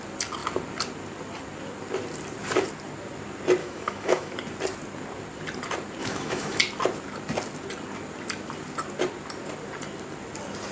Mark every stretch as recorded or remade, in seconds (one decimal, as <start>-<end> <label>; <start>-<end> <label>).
0.0-3.6 recorded; 3.6-4.3 remade; 4.3-6.0 recorded; 6.0-6.6 remade; 6.6-10.7 recorded